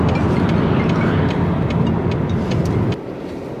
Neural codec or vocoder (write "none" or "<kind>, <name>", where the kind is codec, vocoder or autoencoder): none